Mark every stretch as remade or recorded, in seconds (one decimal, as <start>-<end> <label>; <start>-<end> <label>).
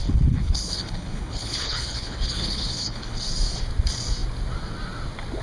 0.0-3.2 remade; 3.2-5.4 recorded